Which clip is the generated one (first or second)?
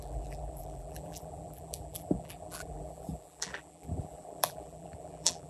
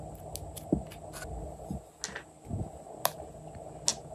first